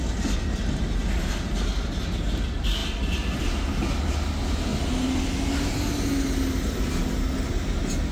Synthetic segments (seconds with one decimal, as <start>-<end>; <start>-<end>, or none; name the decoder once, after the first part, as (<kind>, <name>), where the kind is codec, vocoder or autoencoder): none